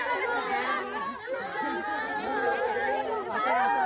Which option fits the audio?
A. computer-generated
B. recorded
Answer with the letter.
B